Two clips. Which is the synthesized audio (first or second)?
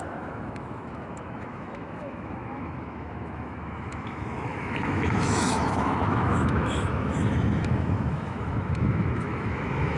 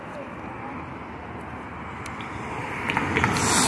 first